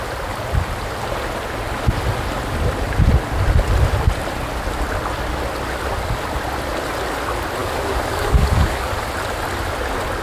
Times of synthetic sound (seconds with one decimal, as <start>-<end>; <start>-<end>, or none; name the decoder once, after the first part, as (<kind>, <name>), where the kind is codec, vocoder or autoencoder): 7.6-8.9 (codec, DAC)